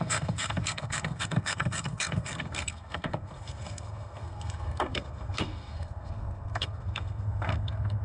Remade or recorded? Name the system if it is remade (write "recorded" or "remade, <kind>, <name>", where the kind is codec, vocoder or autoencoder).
remade, codec, SNAC